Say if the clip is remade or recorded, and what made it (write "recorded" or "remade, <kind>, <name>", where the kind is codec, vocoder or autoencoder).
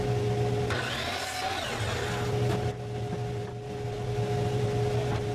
recorded